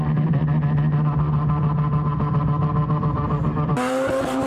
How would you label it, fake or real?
real